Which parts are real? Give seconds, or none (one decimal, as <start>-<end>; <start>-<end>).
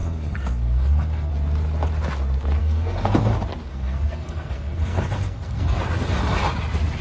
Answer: 1.3-2.6; 3.3-3.7; 5.8-7.0